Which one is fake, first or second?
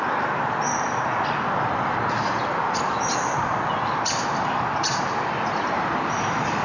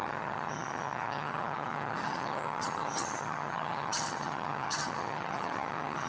second